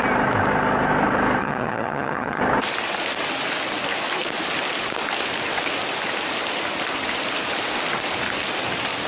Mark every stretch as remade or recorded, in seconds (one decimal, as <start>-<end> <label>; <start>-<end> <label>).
0.0-1.4 recorded; 1.4-2.4 remade; 2.4-9.1 recorded